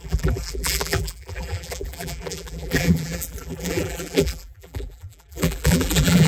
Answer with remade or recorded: remade